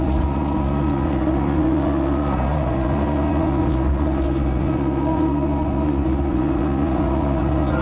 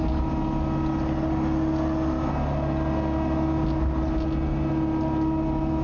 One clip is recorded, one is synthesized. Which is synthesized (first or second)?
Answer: first